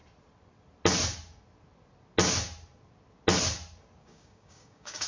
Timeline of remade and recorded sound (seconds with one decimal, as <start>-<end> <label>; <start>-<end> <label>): 0.0-4.0 recorded; 4.0-5.1 remade